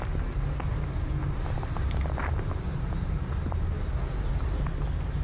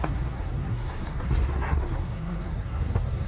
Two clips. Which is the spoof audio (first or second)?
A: second